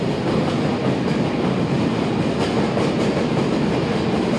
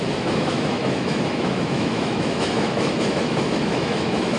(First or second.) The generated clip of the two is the second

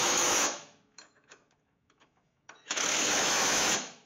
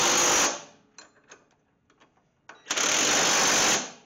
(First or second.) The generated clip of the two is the first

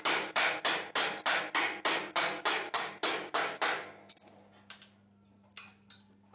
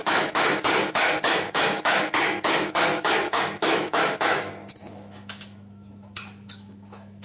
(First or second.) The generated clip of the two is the second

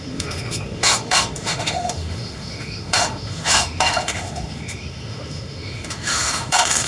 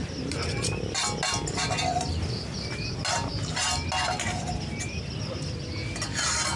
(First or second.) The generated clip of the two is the first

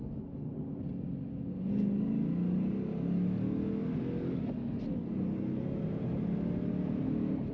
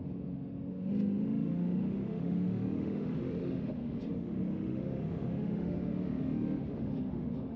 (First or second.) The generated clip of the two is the second